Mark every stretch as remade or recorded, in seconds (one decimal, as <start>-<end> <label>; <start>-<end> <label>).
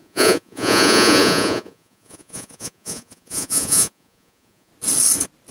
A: 0.0-4.7 remade; 4.7-5.5 recorded